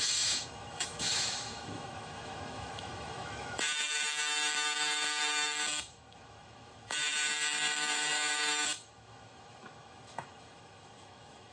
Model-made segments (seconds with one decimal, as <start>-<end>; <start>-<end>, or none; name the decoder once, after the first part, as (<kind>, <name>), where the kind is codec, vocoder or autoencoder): 0.0-11.5 (autoencoder, DAC-VAE)